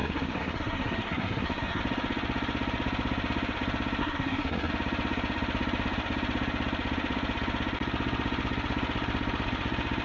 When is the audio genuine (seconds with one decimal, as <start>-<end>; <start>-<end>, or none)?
1.8-4.0; 4.7-10.0